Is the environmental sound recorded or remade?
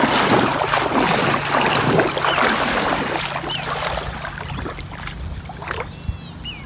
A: recorded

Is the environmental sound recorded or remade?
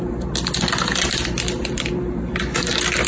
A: recorded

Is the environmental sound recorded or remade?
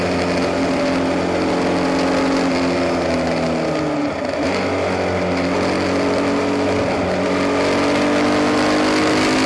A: recorded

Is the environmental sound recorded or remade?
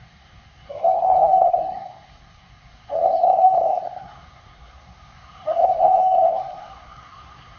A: remade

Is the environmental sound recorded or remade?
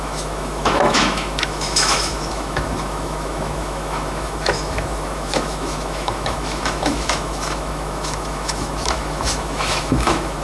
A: remade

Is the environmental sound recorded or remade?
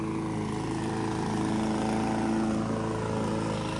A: recorded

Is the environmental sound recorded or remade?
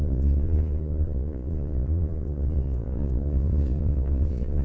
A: remade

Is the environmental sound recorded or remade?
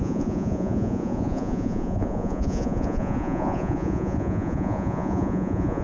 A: remade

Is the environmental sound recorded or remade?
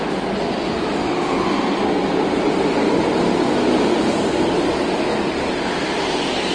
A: recorded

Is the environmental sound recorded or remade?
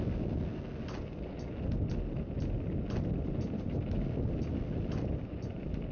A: recorded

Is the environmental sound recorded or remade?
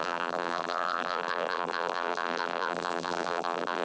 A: remade